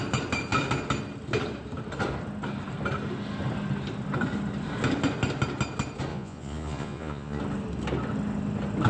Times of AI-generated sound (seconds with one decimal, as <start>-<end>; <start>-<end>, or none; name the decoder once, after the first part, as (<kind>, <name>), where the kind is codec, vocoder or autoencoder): 6.1-7.4 (vocoder, Vocos)